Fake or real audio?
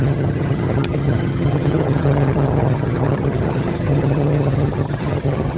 fake